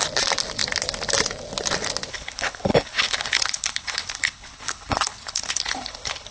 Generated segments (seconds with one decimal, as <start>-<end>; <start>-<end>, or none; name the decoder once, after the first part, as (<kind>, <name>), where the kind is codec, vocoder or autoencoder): 2.1-6.3 (codec, HILCodec)